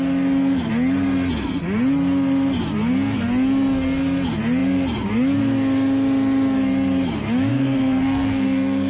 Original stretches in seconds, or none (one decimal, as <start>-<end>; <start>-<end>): 0.0-7.5

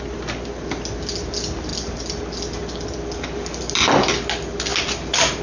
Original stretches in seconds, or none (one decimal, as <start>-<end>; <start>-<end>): 0.0-5.4

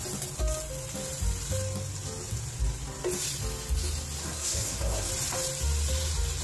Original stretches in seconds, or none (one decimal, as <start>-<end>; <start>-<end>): 0.0-4.2; 5.1-6.4

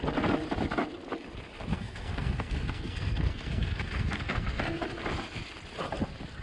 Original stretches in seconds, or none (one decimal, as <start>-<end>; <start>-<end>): 0.0-1.7; 4.8-6.4

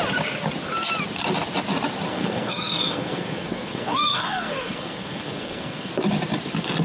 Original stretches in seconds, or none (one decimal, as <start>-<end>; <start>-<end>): 0.0-2.1; 5.9-6.8